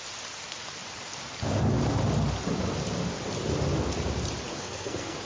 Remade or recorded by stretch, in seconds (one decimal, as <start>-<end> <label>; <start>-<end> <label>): 0.0-4.5 recorded; 4.5-5.2 remade